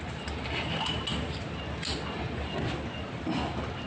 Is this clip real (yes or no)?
yes